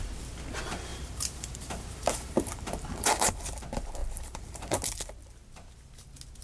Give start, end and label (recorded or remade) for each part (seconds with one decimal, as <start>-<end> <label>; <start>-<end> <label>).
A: 0.0-0.9 recorded; 0.9-3.3 remade; 3.3-4.0 recorded; 4.0-4.7 remade; 4.7-6.4 recorded